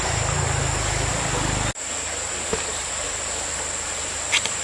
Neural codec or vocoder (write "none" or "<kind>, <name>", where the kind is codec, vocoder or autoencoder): none